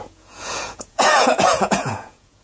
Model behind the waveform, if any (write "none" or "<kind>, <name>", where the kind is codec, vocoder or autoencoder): vocoder, Vocos